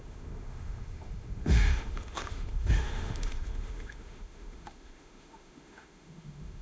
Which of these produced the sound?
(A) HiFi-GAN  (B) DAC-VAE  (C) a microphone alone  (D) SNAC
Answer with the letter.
B